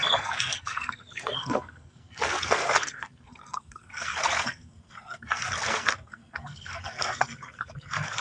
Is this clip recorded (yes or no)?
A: no